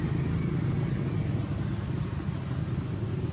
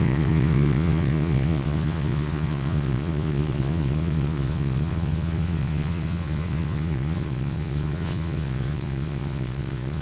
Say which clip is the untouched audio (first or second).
first